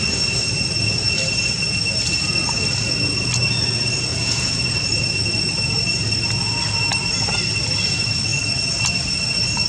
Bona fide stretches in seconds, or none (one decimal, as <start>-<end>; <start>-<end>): 0.0-4.1; 4.7-9.7